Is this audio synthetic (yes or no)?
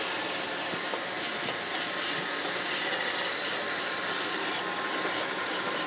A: no